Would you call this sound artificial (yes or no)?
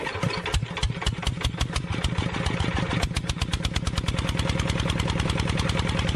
no